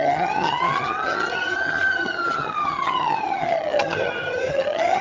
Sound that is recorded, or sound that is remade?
remade